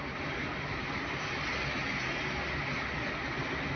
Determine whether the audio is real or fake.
real